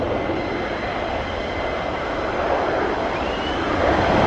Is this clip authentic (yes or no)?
yes